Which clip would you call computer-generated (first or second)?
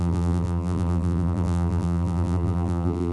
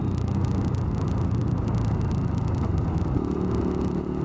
first